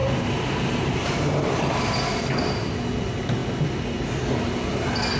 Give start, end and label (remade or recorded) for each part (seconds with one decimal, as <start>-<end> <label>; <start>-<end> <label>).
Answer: 0.0-5.2 recorded